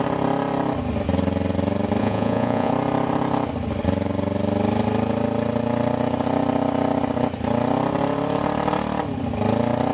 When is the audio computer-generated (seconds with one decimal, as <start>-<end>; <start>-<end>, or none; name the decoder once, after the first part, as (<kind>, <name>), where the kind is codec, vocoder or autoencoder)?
2.0-2.7 (vocoder, Vocos)